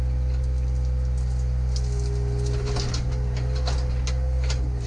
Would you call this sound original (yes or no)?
yes